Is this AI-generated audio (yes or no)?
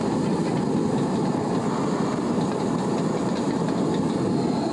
no